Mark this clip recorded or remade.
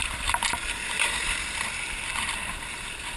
remade